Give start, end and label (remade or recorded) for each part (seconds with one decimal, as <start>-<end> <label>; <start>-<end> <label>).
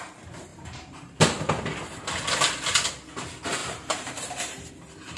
0.0-0.5 recorded; 0.5-1.0 remade; 1.0-3.6 recorded; 3.6-4.7 remade; 4.7-5.2 recorded